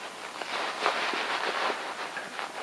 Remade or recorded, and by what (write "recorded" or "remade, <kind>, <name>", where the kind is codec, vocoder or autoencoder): recorded